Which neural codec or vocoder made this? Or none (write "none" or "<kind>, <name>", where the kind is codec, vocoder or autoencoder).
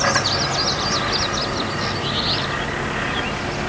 none